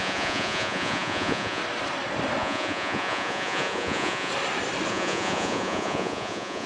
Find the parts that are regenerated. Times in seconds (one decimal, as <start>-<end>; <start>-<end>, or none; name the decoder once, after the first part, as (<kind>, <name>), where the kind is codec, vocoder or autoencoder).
0.0-1.6 (vocoder, Vocos); 2.4-4.3; 4.9-6.7